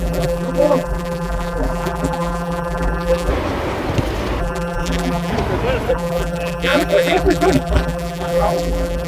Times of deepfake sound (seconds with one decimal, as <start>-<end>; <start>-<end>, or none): 0.0-3.3; 4.4-5.3; 5.9-9.1